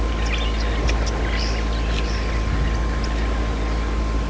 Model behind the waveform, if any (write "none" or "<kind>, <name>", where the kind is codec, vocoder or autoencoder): none